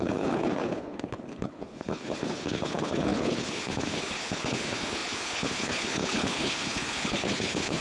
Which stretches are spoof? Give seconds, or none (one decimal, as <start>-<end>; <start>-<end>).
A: 0.0-7.8